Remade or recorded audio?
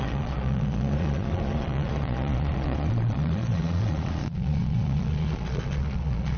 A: remade